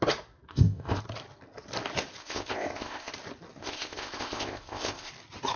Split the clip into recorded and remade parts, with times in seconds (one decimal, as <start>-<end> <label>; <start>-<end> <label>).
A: 0.0-0.5 recorded; 0.5-1.0 remade; 1.0-2.2 recorded; 2.2-3.1 remade; 3.1-3.6 recorded; 3.6-5.1 remade; 5.1-5.6 recorded